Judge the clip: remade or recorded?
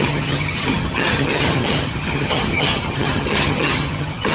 remade